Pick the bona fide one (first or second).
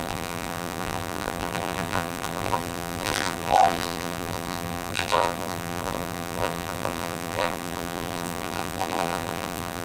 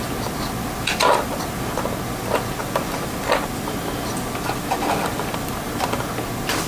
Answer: second